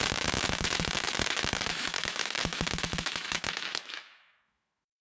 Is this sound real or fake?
fake